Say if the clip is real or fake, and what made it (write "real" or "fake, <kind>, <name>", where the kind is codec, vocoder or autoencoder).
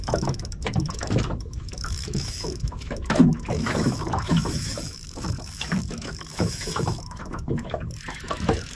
fake, autoencoder, DAC-VAE